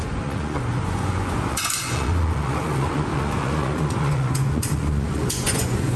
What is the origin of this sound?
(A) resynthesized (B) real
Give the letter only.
A